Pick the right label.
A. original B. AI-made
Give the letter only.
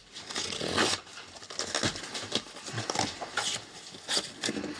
A